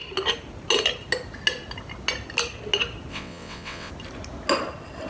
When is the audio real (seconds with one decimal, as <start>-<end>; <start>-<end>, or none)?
0.0-3.1; 3.9-5.1